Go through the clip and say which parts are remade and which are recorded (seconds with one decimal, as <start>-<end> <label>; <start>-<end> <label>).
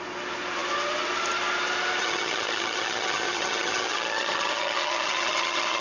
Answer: 0.0-2.0 recorded; 2.0-5.8 remade